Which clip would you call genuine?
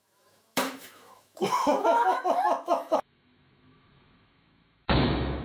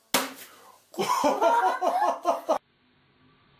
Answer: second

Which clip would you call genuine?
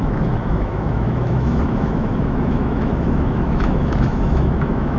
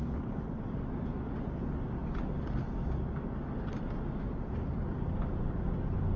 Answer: second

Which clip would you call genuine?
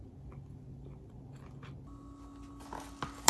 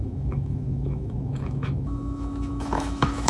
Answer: first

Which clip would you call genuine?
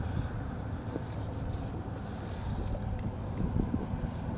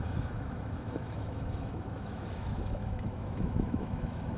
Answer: first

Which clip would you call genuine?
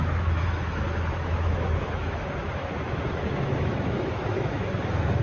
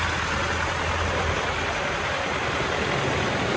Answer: second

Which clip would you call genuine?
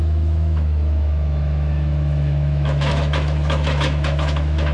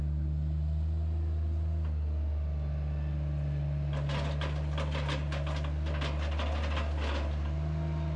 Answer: second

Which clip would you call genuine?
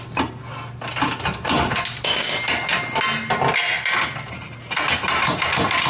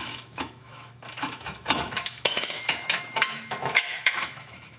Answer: first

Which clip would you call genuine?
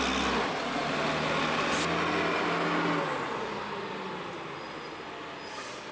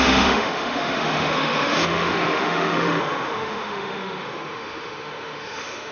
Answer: first